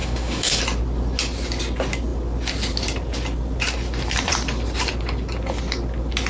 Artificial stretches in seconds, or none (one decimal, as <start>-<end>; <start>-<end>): 0.0-0.6